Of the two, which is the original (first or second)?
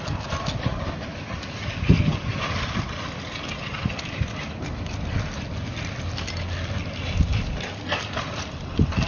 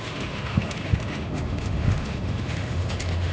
first